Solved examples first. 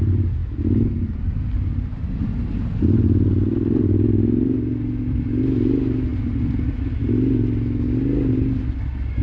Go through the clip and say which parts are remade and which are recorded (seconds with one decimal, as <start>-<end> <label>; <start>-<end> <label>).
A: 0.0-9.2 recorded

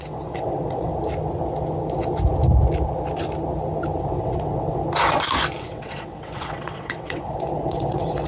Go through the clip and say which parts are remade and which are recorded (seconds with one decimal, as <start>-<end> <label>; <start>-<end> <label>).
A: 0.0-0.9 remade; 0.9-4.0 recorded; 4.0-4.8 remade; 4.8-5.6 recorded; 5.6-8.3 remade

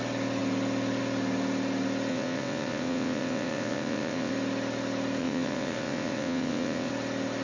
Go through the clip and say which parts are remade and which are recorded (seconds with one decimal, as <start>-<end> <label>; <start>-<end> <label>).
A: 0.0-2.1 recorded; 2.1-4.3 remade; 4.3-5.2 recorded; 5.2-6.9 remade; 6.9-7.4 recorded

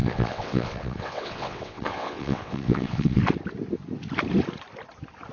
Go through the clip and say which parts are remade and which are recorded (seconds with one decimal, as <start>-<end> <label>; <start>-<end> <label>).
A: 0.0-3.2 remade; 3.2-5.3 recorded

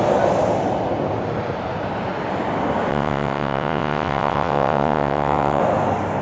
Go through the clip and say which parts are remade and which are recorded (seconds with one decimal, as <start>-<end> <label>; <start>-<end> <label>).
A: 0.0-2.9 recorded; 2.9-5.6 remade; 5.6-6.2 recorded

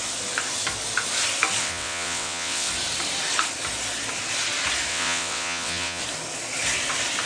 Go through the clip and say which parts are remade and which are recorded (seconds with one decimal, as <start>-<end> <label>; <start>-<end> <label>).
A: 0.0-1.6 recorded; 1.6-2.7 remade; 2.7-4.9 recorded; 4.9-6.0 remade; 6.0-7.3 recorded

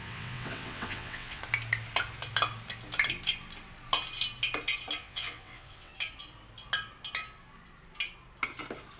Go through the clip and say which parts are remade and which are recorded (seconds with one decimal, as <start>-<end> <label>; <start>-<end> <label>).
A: 0.0-1.4 remade; 1.4-5.0 recorded; 5.0-5.9 remade; 5.9-9.0 recorded